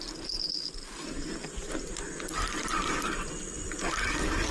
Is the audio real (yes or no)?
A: yes